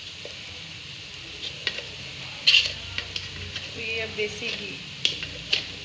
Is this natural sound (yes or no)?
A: yes